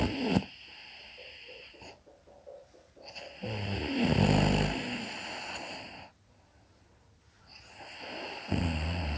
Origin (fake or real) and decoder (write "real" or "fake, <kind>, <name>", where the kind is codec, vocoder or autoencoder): real